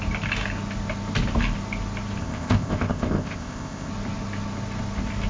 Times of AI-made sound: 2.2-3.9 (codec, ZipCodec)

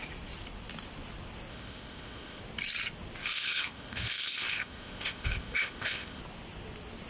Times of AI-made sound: 1.5-2.4 (codec, ZipCodec); 3.2-6.2

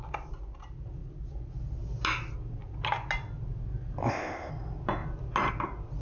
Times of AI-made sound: 4.0-4.5 (codec, ZipCodec)